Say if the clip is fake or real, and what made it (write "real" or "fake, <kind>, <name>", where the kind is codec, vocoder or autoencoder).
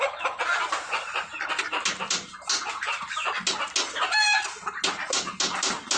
real